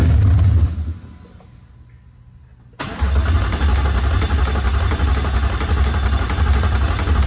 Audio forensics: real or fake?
real